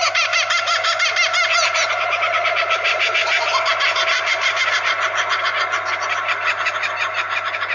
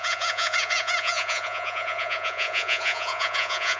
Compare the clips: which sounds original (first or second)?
first